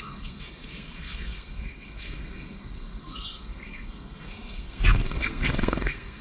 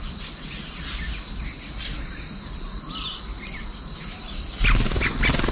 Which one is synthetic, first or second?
first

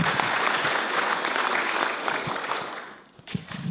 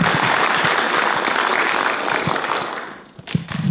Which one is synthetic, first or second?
first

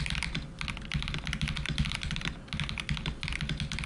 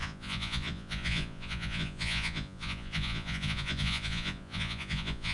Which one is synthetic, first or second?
second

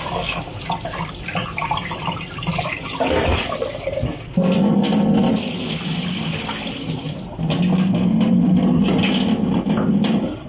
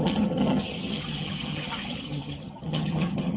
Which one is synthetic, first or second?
second